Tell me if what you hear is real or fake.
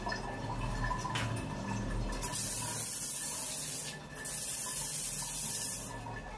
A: real